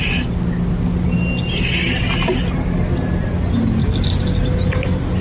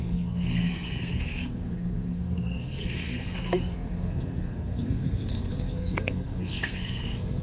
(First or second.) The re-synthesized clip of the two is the second